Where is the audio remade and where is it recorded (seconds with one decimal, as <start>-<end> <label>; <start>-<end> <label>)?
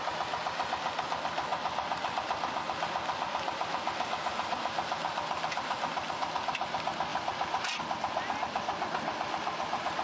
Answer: 0.0-10.0 recorded